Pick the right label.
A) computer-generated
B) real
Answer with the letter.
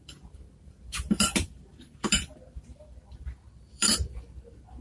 A